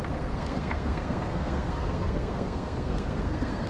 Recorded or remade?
remade